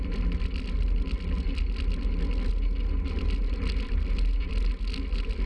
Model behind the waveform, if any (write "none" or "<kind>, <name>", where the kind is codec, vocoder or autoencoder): none